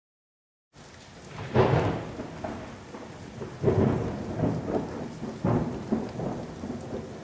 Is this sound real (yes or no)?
yes